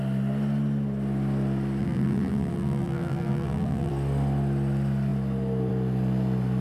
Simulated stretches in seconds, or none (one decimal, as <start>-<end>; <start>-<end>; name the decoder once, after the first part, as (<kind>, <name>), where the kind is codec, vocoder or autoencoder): 1.8-3.9 (vocoder, BigVGAN v2)

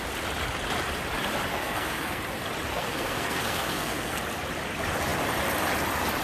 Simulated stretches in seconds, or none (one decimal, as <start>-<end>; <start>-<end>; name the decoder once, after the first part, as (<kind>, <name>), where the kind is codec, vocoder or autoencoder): 1.5-2.2 (codec, SNAC); 2.7-4.2

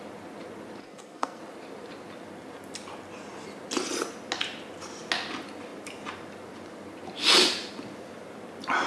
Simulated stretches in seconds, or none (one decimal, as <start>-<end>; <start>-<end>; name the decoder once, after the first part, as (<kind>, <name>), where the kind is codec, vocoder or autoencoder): 0.8-1.4 (codec, SNAC)